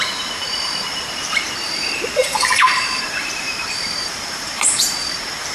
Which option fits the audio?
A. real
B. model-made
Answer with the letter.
B